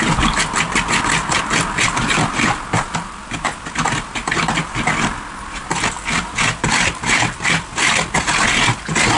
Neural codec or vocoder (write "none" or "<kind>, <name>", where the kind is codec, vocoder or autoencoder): vocoder, BigVGAN v2